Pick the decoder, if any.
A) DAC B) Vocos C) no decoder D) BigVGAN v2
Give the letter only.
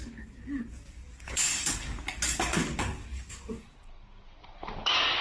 A